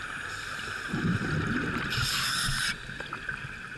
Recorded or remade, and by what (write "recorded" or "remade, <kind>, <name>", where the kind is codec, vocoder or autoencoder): recorded